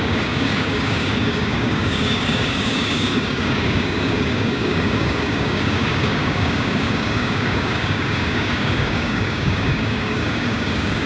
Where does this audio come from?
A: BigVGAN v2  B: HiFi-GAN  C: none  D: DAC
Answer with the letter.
D